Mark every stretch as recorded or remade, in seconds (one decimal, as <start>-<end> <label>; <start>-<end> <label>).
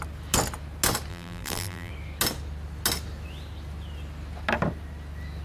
0.0-1.1 recorded; 1.1-1.9 remade; 1.9-5.4 recorded